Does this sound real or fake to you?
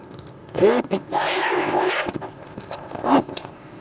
fake